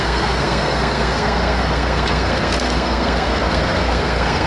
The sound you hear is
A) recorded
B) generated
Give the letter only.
B